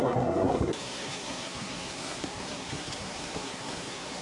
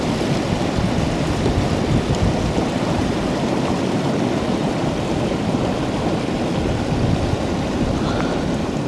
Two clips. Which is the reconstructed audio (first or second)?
first